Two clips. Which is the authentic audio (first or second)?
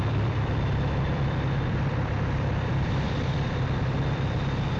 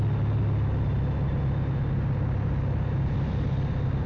second